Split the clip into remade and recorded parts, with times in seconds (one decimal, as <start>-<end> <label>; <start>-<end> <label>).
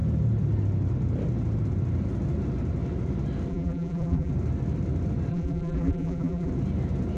0.0-3.5 recorded; 3.5-4.3 remade; 4.3-5.3 recorded; 5.3-6.5 remade; 6.5-7.2 recorded